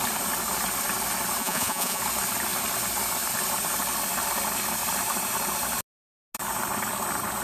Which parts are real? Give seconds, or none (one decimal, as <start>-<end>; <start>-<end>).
0.0-1.4; 2.0-7.4